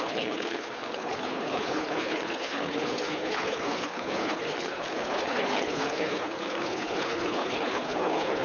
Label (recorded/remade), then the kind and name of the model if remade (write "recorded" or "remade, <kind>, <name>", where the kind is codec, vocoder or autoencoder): remade, codec, HILCodec